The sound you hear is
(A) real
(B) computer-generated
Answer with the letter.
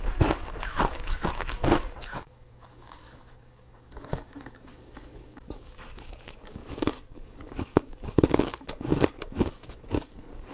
B